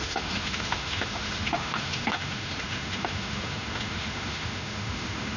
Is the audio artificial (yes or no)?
yes